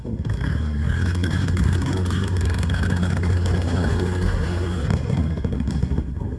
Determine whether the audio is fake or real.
fake